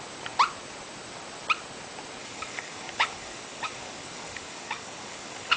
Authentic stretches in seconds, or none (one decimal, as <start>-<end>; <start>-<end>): 0.0-2.2